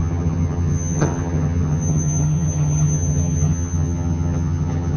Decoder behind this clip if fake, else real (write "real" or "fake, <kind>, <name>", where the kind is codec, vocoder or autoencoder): fake, vocoder, HiFi-GAN